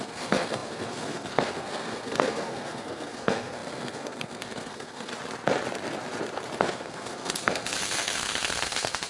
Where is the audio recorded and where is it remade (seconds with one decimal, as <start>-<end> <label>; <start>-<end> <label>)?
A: 0.0-5.1 remade; 5.1-6.6 recorded; 6.6-9.1 remade